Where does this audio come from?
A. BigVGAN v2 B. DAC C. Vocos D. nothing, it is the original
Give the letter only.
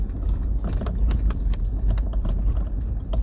D